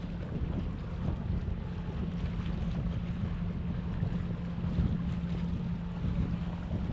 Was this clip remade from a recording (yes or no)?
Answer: no